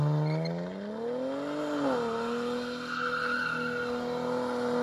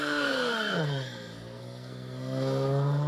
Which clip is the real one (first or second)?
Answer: first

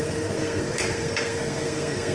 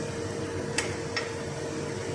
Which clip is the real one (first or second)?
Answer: second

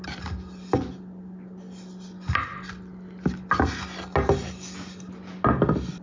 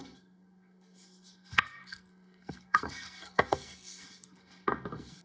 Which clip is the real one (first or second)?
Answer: first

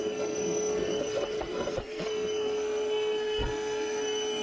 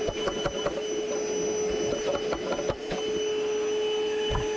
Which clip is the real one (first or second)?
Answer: second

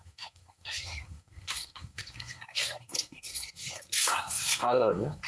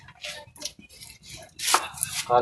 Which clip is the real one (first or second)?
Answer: second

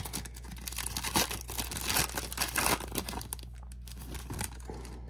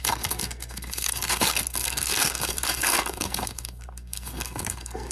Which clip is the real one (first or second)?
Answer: first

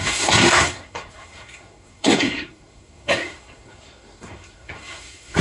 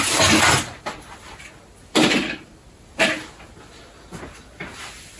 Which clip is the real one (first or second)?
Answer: second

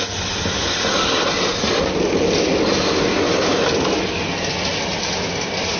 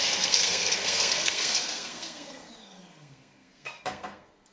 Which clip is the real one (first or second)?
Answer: first